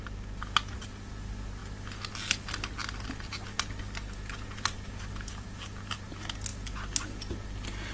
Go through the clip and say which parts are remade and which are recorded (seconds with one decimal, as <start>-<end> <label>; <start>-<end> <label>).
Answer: 0.0-7.9 recorded